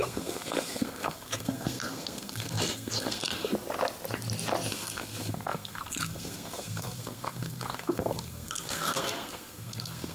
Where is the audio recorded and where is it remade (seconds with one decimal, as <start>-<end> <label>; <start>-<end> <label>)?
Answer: 0.0-3.5 remade; 3.5-4.7 recorded; 4.7-10.1 remade